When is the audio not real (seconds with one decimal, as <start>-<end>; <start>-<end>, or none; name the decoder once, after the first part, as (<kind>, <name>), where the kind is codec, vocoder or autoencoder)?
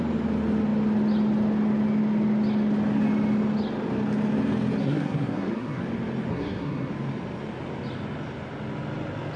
4.8-5.8 (codec, SNAC); 6.3-6.9